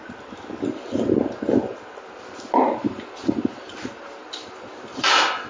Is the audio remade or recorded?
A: recorded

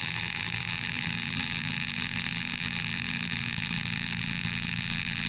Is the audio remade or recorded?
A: remade